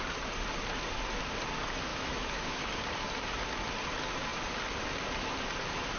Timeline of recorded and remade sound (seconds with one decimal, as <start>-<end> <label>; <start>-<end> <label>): 0.0-1.9 recorded; 1.9-2.7 remade; 2.7-6.0 recorded